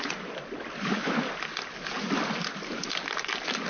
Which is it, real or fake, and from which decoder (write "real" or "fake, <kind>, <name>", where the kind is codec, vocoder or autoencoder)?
real